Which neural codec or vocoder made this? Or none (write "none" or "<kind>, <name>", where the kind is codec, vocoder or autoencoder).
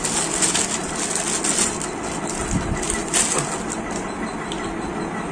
none